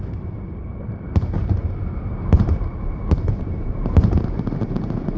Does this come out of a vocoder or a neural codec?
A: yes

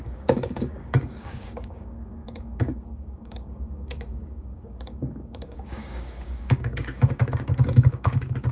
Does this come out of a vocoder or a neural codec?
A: yes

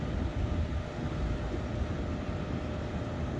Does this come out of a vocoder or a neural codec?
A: no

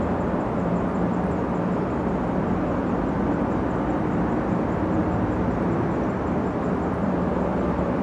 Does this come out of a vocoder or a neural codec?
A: no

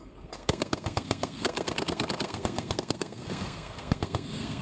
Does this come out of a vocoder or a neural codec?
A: yes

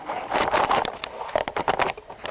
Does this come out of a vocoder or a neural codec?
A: yes